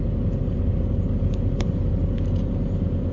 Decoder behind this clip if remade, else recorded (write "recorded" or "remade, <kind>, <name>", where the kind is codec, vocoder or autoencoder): recorded